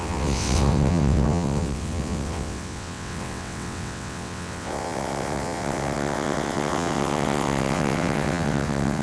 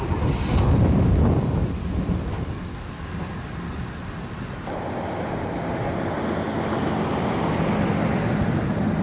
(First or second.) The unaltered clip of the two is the second